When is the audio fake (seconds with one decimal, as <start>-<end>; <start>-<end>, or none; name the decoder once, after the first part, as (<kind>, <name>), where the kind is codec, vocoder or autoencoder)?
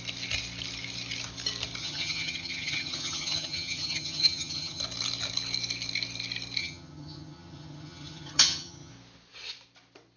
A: 1.8-4.8 (vocoder, HiFi-GAN); 6.6-8.9